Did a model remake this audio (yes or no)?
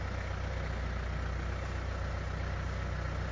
no